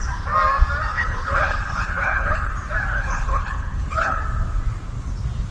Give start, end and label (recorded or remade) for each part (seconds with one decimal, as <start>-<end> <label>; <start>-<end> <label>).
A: 0.0-0.9 recorded; 0.9-2.5 remade; 2.5-2.9 recorded; 2.9-4.2 remade; 4.2-5.5 recorded